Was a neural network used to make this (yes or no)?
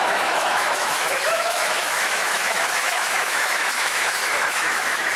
yes